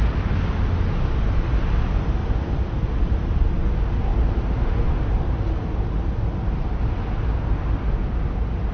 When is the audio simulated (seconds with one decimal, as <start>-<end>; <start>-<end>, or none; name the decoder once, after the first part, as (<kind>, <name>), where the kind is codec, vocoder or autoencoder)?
2.2-3.5 (vocoder, BigVGAN v2); 4.1-6.0